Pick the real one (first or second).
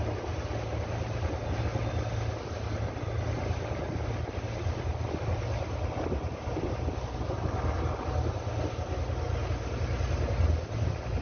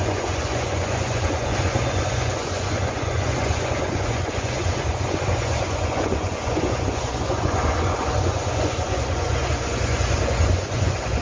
first